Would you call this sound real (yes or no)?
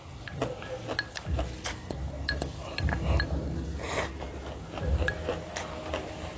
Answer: yes